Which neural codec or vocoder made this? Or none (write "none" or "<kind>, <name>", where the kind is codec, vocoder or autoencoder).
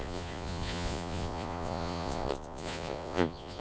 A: vocoder, Vocos